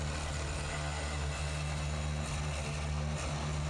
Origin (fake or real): real